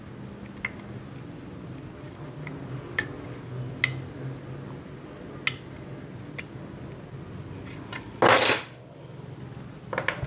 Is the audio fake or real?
real